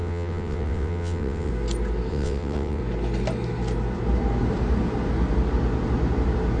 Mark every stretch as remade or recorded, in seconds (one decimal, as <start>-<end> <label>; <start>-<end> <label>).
0.0-1.5 remade; 1.5-2.1 recorded; 2.1-2.8 remade; 2.8-6.6 recorded